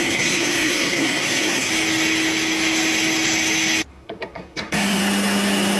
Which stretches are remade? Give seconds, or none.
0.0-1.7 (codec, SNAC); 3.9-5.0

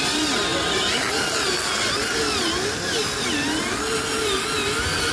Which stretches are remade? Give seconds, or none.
none